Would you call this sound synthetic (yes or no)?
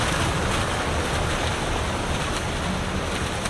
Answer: no